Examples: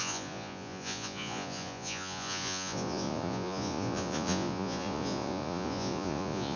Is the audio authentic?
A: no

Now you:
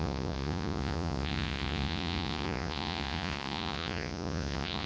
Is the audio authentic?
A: no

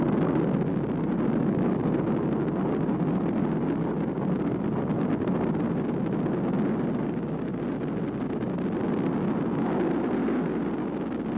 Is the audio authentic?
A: yes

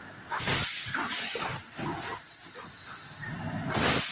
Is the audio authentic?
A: yes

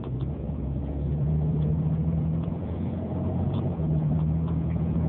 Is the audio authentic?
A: no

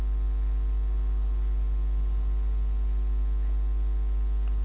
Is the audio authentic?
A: yes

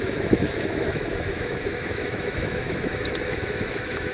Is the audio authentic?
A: no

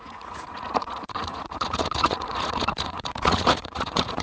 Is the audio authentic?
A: no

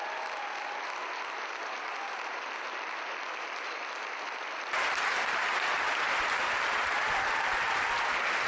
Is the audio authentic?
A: yes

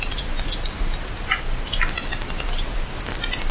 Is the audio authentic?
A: yes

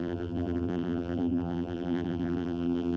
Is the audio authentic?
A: no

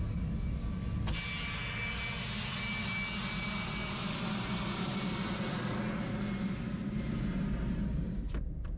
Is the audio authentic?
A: yes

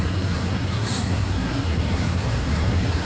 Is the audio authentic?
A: no